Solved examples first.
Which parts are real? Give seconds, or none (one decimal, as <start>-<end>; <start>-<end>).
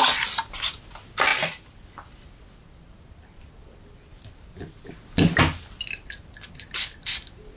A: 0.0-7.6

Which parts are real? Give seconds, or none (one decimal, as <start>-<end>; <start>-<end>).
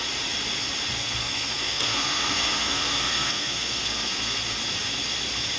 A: 0.0-1.0; 4.4-5.6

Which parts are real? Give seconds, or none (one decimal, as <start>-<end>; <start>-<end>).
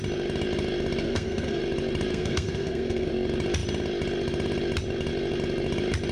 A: 0.0-1.0; 1.6-2.1; 3.1-6.1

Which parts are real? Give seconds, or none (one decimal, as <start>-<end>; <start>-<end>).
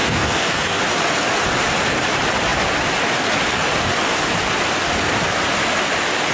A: 0.8-6.3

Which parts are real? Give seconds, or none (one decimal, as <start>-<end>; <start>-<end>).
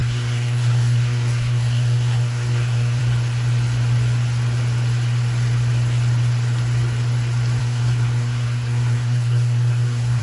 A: 3.0-7.6